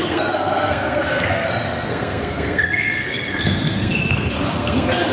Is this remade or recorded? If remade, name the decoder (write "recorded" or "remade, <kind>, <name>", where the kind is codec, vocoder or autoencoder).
remade, codec, SNAC